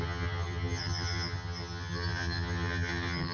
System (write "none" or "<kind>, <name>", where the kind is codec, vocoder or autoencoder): vocoder, HiFi-GAN